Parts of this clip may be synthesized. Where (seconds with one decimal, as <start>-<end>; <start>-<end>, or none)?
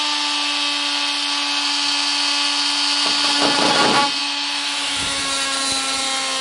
4.2-5.2